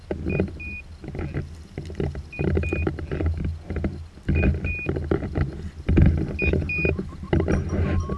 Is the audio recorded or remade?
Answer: recorded